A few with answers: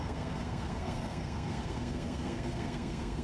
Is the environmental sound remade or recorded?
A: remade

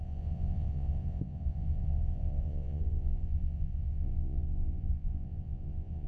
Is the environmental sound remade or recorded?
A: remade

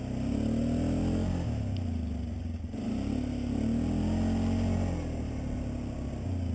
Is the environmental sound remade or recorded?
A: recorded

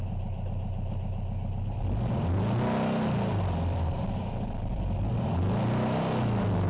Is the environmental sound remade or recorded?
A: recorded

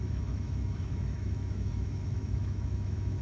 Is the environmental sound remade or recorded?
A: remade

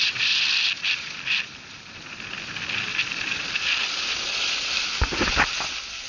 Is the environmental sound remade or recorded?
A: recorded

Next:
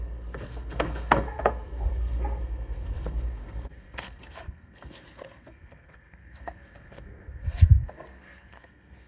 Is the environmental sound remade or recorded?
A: remade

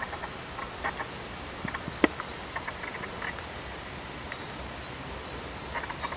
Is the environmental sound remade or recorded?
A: recorded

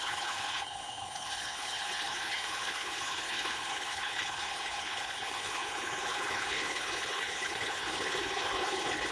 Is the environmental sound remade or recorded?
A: remade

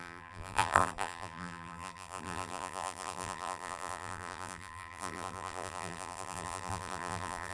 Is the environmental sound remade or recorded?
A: remade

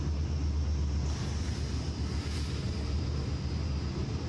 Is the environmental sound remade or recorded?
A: recorded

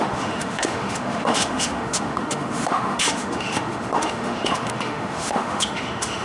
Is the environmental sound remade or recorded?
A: remade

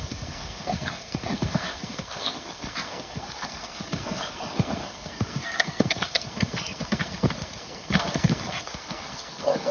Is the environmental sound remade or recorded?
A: remade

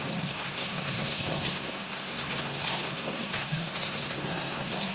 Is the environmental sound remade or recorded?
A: remade